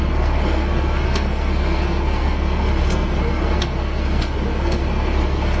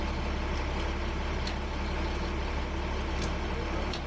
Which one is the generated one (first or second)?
first